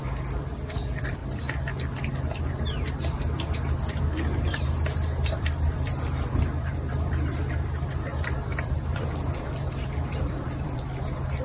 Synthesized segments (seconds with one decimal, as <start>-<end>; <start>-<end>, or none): 0.0-1.2; 4.0-11.4